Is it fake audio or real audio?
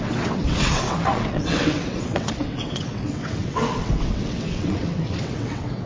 fake